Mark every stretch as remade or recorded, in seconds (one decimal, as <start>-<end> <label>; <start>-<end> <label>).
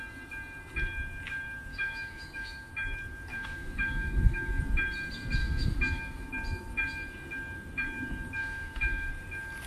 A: 0.0-1.7 recorded; 1.7-2.7 remade; 2.7-3.3 recorded; 3.3-4.6 remade; 4.6-5.4 recorded; 5.4-6.3 remade; 6.3-8.4 recorded; 8.4-9.1 remade; 9.1-9.7 recorded